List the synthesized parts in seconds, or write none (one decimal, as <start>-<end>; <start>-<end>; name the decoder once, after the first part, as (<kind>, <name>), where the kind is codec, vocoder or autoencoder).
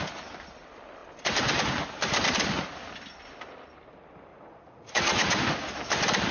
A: 4.3-5.4 (vocoder, Vocos)